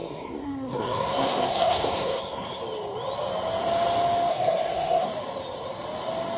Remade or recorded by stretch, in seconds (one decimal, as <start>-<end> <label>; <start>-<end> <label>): 0.0-2.6 remade; 2.6-4.3 recorded; 4.3-5.1 remade; 5.1-6.4 recorded